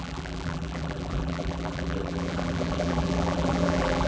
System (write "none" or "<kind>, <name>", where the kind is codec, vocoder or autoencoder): vocoder, BigVGAN v2